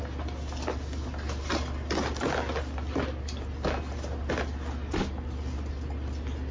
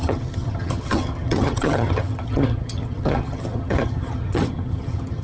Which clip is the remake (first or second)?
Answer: second